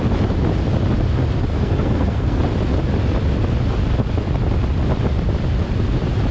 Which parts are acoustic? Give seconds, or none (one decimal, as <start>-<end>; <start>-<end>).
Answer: 0.0-1.5; 2.4-6.3